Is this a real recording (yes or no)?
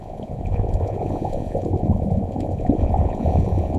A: no